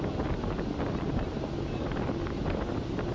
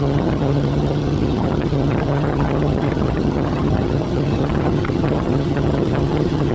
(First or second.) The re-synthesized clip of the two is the second